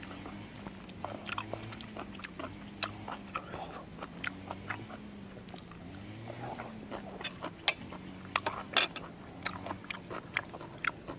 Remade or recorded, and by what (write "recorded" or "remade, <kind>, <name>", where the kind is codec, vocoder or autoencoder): recorded